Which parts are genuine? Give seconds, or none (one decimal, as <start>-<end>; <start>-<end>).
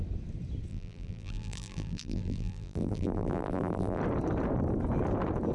0.0-0.7; 4.0-5.5